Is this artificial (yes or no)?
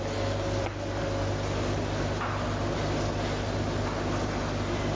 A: no